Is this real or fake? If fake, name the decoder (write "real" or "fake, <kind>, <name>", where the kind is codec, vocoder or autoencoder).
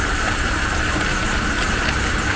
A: fake, vocoder, BigVGAN v2